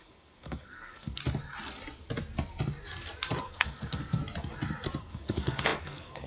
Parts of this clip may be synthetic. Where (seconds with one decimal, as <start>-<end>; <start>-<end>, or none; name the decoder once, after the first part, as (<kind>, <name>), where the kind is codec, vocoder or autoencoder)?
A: 0.0-1.2 (codec, SNAC); 3.4-4.2; 5.0-6.3